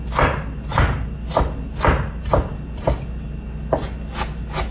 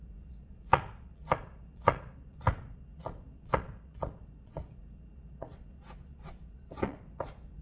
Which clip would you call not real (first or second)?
second